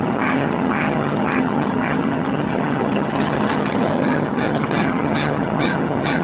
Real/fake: fake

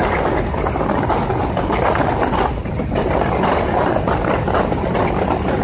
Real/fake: real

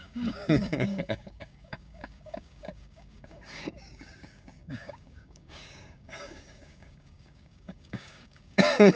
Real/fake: fake